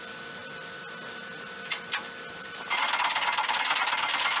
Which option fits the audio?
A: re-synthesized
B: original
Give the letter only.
B